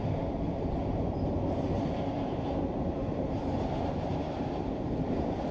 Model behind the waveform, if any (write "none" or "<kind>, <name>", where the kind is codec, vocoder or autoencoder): vocoder, BigVGAN v2